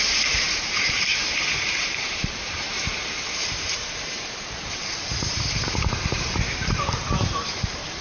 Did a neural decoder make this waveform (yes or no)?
yes